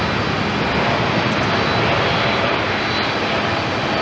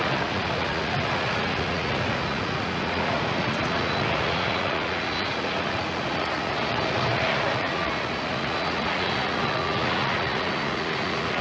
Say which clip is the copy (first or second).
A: second